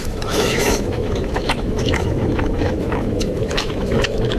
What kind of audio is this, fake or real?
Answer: fake